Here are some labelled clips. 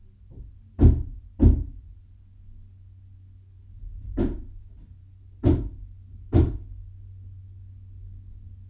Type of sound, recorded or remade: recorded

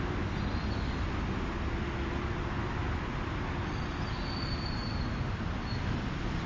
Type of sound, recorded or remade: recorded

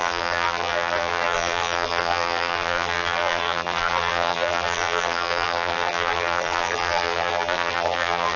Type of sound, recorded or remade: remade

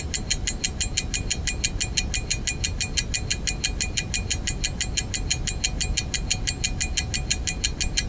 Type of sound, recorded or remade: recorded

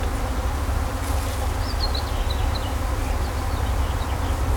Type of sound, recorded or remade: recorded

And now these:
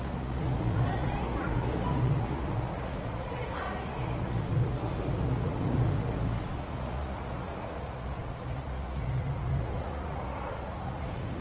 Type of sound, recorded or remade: remade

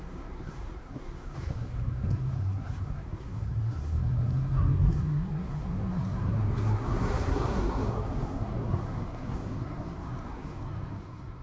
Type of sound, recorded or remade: remade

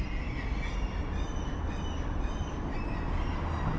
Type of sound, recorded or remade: recorded